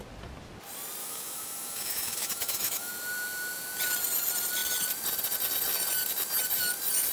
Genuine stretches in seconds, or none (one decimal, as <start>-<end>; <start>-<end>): 0.0-1.0; 2.9-7.1